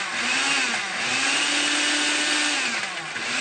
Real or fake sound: real